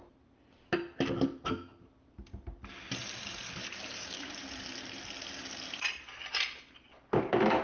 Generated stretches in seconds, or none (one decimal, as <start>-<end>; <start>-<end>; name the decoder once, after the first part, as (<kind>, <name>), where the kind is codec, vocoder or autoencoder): 3.0-5.0 (vocoder, BigVGAN v2)